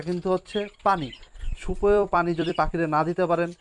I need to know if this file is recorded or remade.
remade